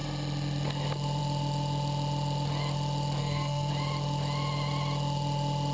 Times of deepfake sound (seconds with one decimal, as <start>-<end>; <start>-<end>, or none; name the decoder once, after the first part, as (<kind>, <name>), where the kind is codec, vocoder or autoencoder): 3.2-3.7 (codec, SNAC)